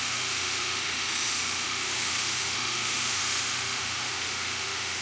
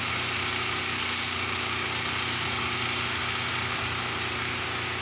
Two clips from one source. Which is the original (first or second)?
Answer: second